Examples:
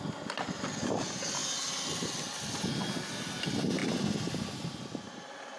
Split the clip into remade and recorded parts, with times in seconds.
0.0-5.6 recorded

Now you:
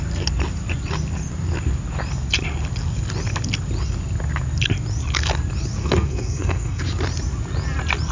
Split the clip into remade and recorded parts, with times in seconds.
0.0-5.8 recorded; 5.8-6.8 remade; 6.8-8.1 recorded

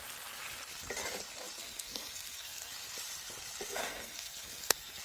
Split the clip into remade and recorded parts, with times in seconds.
0.0-1.6 recorded; 1.6-2.7 remade; 2.7-3.8 recorded; 3.8-5.0 remade